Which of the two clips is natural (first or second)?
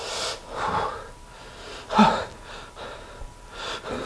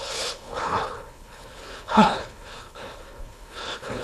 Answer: first